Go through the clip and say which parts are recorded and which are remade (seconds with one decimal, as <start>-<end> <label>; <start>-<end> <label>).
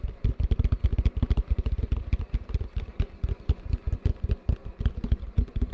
0.0-5.7 recorded